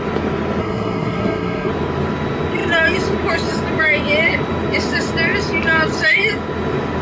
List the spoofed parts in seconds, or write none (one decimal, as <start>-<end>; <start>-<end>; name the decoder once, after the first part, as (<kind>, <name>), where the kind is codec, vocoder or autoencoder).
0.6-1.7 (codec, SNAC)